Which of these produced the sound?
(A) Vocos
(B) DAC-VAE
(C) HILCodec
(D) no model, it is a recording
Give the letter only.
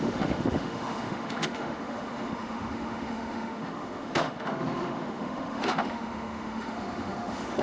B